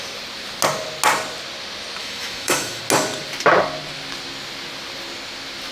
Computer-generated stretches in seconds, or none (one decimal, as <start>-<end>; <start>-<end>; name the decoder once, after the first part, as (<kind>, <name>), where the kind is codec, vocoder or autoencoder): 2.0-2.8 (autoencoder, DAC-VAE)

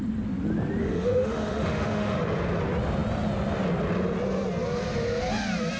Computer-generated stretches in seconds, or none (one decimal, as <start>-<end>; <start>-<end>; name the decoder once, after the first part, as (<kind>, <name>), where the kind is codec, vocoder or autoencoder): 0.8-2.2 (autoencoder, DAC-VAE)

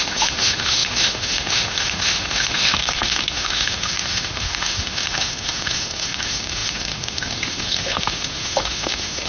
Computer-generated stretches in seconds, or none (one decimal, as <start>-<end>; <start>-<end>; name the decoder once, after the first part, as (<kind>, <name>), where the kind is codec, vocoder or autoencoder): 0.0-9.3 (autoencoder, DAC-VAE)

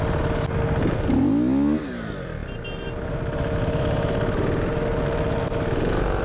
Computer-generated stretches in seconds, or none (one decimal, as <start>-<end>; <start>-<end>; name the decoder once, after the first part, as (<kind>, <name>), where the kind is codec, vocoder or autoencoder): none